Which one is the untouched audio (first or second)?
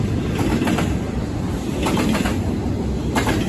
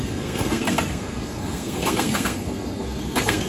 first